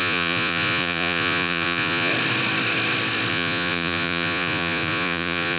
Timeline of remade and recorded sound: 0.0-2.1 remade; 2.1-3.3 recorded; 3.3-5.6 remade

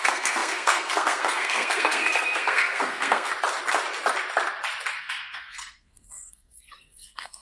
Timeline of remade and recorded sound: 0.0-3.3 remade; 3.3-5.0 recorded; 5.0-7.4 remade

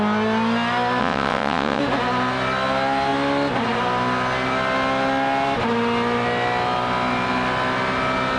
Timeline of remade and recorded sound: 0.0-1.0 recorded; 1.0-1.8 remade; 1.8-8.4 recorded

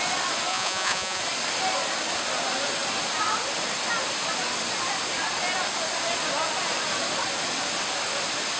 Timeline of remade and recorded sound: 0.0-0.5 recorded; 0.5-1.2 remade; 1.2-8.6 recorded

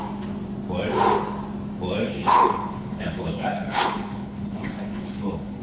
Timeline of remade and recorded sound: 0.0-2.0 recorded; 2.0-5.6 remade

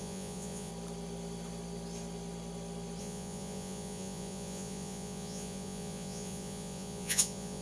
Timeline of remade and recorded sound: 0.0-0.7 remade; 0.7-3.0 recorded; 3.0-7.6 remade

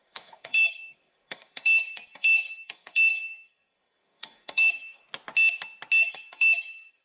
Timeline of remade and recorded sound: 0.0-5.0 remade; 5.0-6.0 recorded; 6.0-7.0 remade